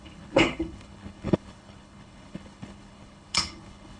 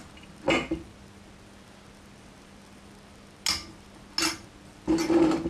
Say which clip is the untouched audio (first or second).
second